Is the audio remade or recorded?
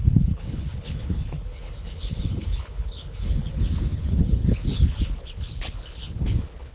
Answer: remade